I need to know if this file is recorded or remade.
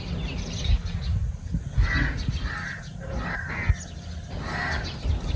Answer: recorded